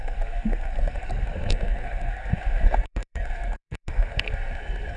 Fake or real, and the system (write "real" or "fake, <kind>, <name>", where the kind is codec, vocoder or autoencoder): fake, codec, SNAC